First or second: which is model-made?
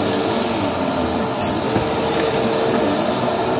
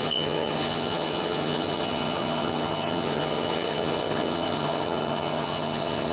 second